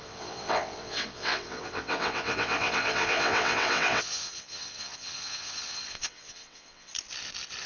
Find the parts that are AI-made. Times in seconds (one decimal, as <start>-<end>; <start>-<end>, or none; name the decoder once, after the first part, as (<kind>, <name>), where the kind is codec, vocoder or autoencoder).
0.0-6.9 (vocoder, WaveNeXt)